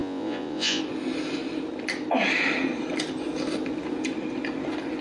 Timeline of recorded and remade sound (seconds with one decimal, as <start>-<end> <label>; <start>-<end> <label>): 0.0-0.8 remade; 0.8-5.0 recorded

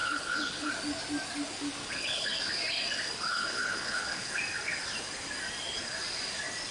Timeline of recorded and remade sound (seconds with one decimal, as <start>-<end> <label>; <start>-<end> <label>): 0.0-0.7 remade; 0.7-1.8 recorded; 1.8-2.3 remade; 2.3-3.3 recorded; 3.3-4.4 remade; 4.4-6.7 recorded

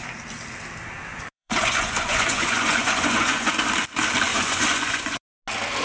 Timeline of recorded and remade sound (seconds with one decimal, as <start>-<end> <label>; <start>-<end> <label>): 0.0-1.1 recorded; 1.1-3.5 remade; 3.5-4.3 recorded; 4.3-5.2 remade; 5.2-5.8 recorded

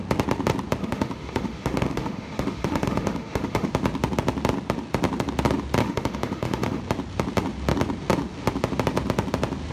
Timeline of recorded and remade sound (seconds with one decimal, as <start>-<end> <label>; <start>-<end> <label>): 0.0-0.8 recorded; 0.8-3.7 remade; 3.7-5.8 recorded; 5.8-6.8 remade; 6.8-9.7 recorded

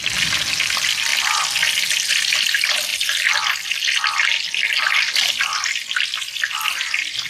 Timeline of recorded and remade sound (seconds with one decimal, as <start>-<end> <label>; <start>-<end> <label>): 0.0-7.3 recorded